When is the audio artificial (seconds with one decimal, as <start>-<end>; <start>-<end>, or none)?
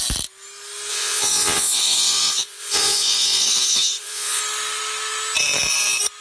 0.9-4.4